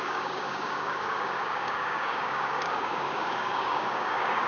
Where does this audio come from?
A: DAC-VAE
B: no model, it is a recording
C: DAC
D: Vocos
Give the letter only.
C